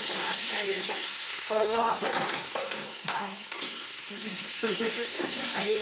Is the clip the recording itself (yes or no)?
no